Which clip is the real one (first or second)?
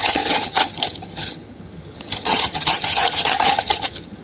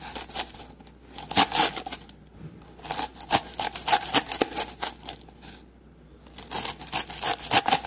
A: second